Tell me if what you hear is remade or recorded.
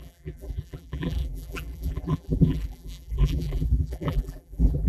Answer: remade